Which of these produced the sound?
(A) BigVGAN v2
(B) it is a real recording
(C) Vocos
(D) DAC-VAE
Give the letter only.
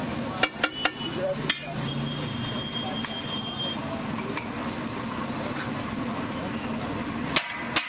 B